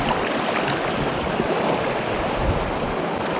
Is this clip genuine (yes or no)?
yes